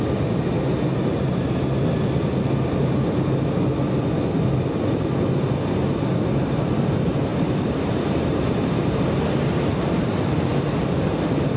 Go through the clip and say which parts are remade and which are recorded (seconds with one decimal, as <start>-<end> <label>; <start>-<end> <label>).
0.0-7.3 recorded; 7.3-10.4 remade; 10.4-11.6 recorded